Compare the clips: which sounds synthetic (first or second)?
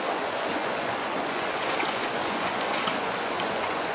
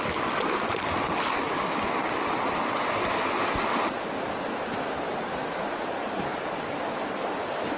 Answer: first